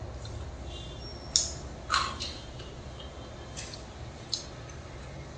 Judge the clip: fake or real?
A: real